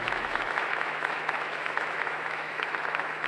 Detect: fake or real fake